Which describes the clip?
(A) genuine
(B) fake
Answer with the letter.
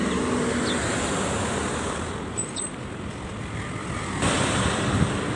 A